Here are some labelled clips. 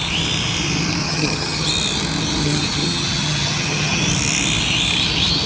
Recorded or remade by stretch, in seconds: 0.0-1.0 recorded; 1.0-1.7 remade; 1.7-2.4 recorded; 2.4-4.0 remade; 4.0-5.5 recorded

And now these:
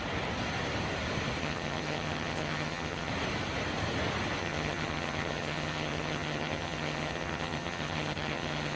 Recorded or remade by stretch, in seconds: 0.0-1.4 recorded; 1.4-3.1 remade; 3.1-4.4 recorded; 4.4-8.8 remade

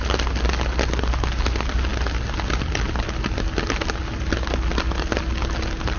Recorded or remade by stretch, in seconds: 0.0-6.0 recorded